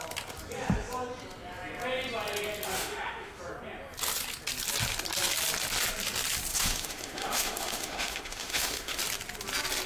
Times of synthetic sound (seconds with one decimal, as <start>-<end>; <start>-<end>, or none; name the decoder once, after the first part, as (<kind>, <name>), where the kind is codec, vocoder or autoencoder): 2.8-3.4 (autoencoder, DAC-VAE); 6.5-9.0